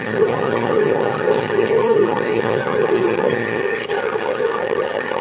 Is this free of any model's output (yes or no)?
no